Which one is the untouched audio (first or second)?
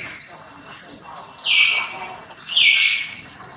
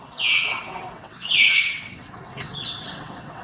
first